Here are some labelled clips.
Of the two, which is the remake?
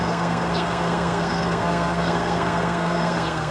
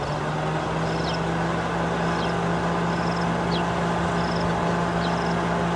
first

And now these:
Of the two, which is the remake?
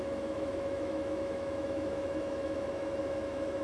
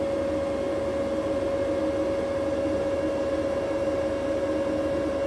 first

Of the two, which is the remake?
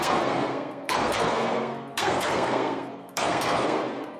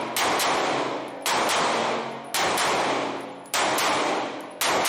first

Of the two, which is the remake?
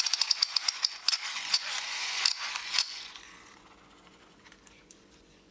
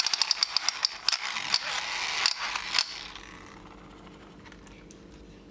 first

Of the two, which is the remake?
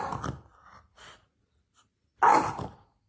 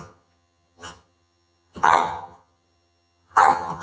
second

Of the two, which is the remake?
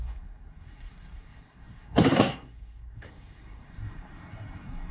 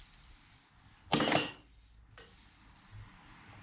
first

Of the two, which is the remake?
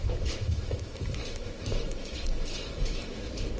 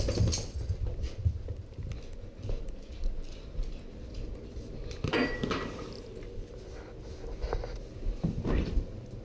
first